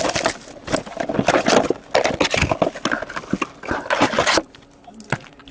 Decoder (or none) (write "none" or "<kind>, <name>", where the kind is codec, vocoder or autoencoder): none